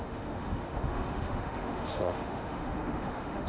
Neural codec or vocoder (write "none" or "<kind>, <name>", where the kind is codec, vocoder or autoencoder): autoencoder, DAC-VAE